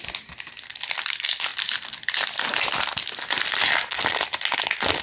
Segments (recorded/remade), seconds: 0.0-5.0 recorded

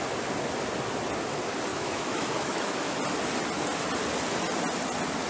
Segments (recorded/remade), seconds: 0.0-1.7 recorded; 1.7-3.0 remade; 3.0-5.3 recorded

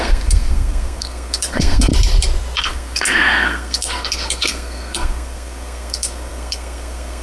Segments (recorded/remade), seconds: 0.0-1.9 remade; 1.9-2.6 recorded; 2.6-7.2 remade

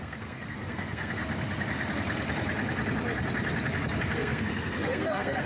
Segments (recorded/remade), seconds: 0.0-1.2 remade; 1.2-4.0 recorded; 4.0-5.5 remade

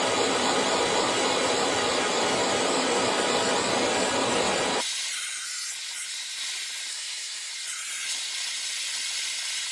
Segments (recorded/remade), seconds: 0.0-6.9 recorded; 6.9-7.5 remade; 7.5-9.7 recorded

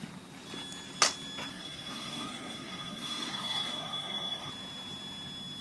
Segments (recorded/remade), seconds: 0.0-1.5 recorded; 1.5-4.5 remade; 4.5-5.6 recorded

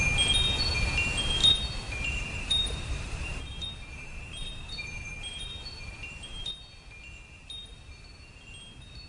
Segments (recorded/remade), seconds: 0.0-1.4 recorded; 1.4-6.5 remade; 6.5-9.1 recorded